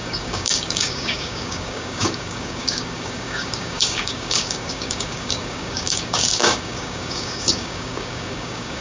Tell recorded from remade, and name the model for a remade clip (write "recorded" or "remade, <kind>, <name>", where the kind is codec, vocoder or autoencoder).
remade, codec, DAC